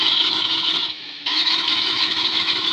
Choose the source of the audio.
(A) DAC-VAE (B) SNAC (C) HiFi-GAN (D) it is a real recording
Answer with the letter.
A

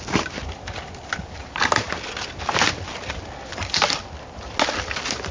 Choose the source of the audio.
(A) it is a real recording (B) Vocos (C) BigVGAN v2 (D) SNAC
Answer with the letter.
A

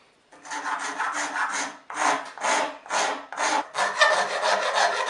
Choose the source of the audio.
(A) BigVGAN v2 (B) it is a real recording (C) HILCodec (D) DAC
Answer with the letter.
B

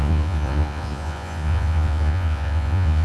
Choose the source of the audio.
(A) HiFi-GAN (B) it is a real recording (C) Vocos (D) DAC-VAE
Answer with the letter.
C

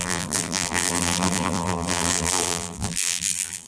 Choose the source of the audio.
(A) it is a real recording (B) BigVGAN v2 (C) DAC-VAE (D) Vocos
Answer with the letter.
B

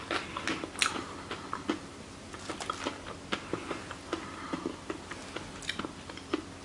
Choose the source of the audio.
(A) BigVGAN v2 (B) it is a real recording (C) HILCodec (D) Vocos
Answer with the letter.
B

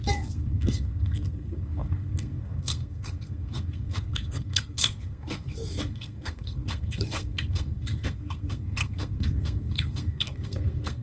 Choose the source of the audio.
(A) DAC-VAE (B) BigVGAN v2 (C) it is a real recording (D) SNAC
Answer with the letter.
D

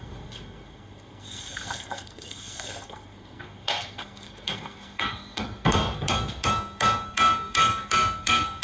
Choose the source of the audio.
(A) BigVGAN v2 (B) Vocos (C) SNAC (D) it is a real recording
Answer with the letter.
C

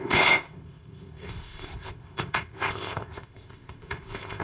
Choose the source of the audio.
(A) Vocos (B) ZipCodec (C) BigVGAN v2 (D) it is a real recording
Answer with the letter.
B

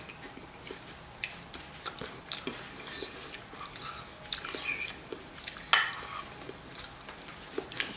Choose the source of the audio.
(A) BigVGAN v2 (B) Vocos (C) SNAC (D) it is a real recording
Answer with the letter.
D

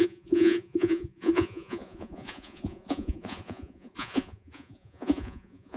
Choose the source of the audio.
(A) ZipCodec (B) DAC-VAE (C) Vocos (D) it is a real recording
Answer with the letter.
C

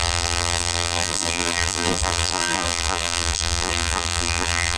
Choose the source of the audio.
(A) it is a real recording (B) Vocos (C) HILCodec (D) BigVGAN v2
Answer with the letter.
D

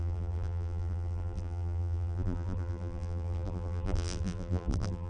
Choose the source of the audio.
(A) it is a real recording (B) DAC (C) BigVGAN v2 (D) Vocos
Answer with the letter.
C